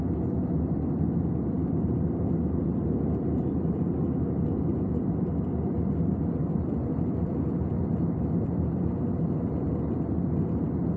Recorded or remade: remade